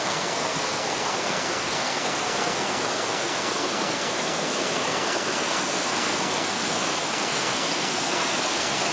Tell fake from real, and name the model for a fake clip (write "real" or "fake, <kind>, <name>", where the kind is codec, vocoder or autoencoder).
fake, codec, SNAC